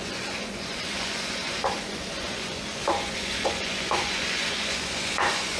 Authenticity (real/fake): fake